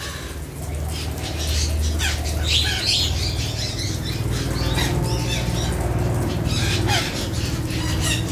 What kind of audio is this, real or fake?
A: real